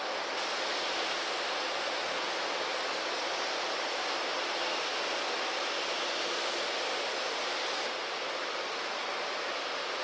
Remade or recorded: recorded